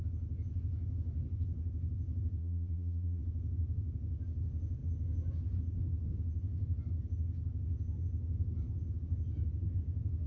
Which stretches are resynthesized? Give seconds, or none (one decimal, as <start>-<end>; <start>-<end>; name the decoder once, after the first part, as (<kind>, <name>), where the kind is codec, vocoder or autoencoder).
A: 2.4-3.2 (vocoder, Vocos)